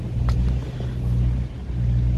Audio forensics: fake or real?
real